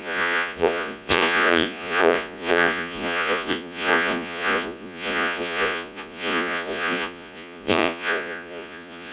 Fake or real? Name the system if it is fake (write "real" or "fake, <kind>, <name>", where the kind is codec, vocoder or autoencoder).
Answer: fake, vocoder, Vocos